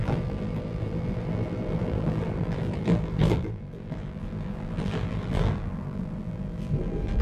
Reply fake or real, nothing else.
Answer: fake